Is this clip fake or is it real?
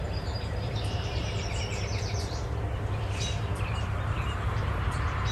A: fake